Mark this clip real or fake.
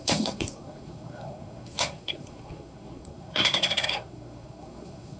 fake